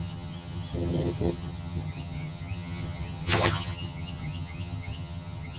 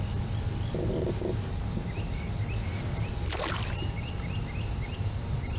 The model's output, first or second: first